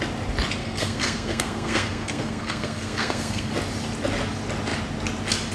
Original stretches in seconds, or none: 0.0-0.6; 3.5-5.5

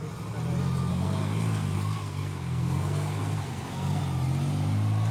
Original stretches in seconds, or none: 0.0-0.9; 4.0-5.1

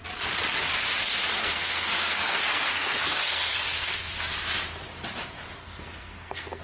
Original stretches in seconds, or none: 0.0-1.3; 4.0-5.6